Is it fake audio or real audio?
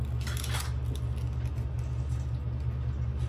real